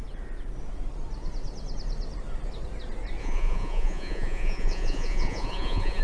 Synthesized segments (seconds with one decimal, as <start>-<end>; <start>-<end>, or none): 3.2-6.0